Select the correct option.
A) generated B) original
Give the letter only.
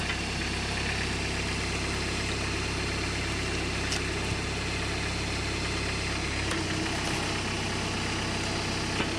B